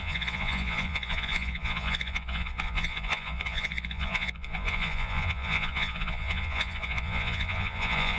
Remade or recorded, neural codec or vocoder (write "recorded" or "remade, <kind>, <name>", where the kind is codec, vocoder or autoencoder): remade, vocoder, Vocos